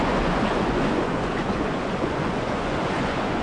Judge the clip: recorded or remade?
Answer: remade